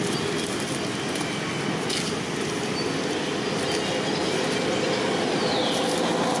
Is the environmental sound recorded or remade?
recorded